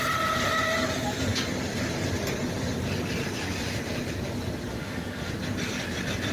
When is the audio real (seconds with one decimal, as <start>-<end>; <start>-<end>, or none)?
0.0-4.7; 5.3-6.3